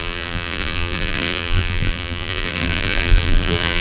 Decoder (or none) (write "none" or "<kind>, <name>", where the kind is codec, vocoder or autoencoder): vocoder, BigVGAN v2